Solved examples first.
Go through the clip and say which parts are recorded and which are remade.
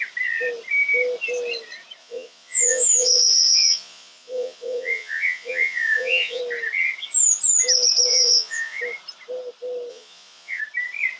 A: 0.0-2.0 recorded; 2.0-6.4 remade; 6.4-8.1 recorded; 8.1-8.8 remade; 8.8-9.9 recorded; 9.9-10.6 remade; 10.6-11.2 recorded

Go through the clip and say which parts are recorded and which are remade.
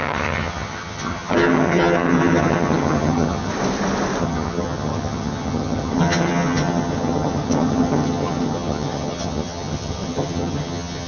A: 0.0-3.5 remade; 3.5-4.2 recorded; 4.2-11.1 remade